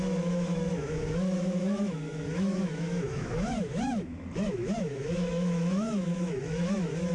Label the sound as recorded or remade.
remade